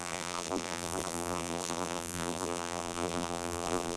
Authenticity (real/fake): fake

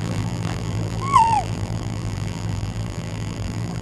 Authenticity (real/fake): fake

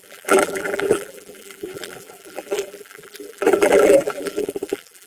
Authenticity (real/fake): fake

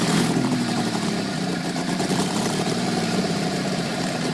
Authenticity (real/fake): fake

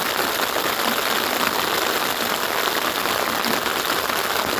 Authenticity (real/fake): real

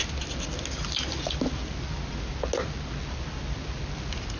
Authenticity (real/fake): real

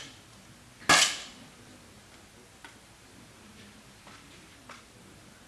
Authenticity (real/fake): real